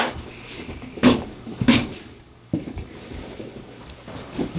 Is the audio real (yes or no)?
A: no